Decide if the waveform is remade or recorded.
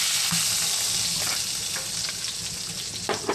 recorded